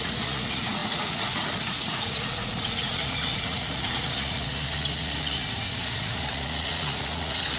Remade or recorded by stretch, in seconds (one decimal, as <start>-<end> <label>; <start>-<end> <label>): 0.0-7.6 remade